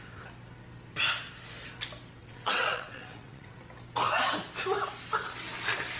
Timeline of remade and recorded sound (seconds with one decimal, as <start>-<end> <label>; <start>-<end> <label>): 0.0-2.2 recorded; 2.2-3.6 remade; 3.6-6.0 recorded

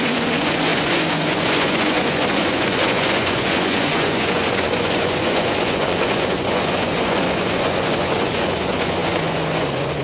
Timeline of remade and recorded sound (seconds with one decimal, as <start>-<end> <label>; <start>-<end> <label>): 0.0-10.0 remade

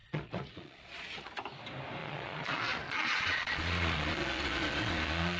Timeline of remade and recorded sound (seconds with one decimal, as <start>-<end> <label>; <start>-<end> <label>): 0.0-1.3 remade; 1.3-2.0 recorded; 2.0-5.4 remade